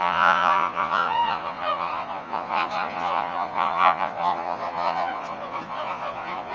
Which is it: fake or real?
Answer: fake